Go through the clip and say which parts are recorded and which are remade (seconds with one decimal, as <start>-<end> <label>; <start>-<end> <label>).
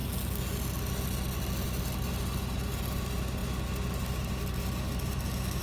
0.0-5.6 recorded